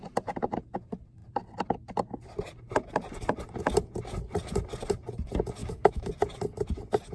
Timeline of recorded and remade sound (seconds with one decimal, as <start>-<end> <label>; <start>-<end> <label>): 0.0-5.6 recorded; 5.6-6.1 remade; 6.1-7.1 recorded